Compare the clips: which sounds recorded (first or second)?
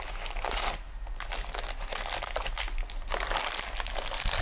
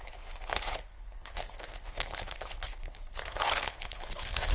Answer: first